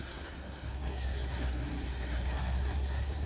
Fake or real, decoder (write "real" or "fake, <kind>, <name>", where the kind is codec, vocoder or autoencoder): fake, codec, SNAC